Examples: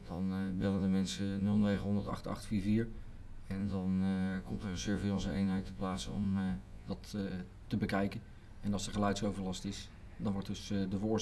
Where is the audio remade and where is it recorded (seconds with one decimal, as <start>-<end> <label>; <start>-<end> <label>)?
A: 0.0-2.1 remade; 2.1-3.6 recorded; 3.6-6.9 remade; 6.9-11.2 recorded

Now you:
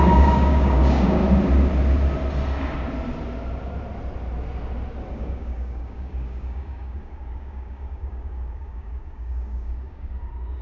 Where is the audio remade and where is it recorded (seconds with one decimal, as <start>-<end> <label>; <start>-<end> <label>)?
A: 0.0-1.2 remade; 1.2-5.1 recorded; 5.1-10.6 remade

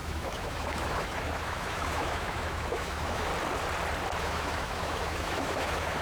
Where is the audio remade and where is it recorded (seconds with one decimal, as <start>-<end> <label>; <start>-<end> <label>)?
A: 0.0-3.3 remade; 3.3-4.2 recorded; 4.2-6.0 remade

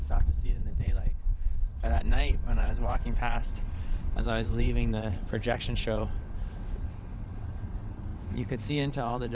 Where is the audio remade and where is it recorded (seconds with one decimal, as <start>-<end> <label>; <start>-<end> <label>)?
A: 0.0-9.3 remade